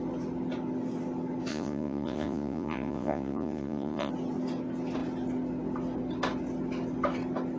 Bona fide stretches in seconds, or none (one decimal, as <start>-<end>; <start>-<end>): 0.0-1.5; 4.1-7.6

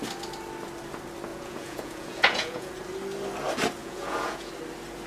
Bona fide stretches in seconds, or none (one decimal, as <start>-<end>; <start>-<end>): 0.0-1.3; 2.7-3.8; 4.5-5.1

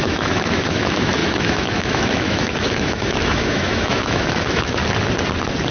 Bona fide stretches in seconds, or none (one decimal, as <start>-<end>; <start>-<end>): 4.8-5.7

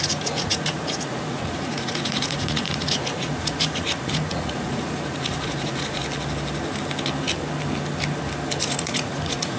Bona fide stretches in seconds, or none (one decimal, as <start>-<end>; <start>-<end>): 6.0-8.6

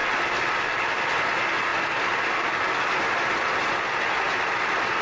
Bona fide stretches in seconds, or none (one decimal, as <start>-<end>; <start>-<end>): 0.0-5.0

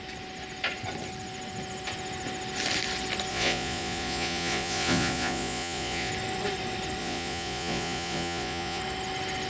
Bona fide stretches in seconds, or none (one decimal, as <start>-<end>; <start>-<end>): 0.0-3.3; 6.1-7.0; 8.8-9.5

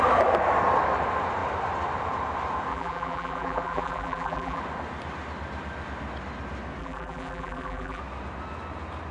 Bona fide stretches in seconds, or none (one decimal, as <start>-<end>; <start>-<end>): 0.0-2.7; 4.6-6.8; 8.0-9.1

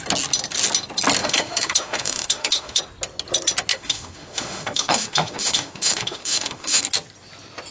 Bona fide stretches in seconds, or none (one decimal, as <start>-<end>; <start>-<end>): 0.0-1.2; 2.8-3.7; 6.8-7.7